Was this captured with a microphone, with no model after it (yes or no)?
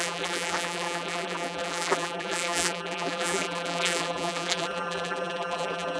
no